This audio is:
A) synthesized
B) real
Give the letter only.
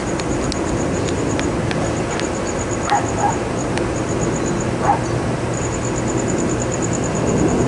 B